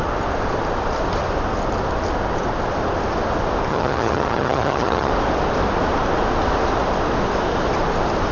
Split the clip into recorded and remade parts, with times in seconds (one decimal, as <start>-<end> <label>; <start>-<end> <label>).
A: 0.0-3.7 recorded; 3.7-5.1 remade; 5.1-8.3 recorded